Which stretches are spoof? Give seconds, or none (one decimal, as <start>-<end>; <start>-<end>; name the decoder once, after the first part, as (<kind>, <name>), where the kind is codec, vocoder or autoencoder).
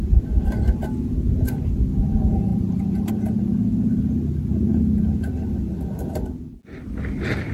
2.5-3.1 (vocoder, BigVGAN v2)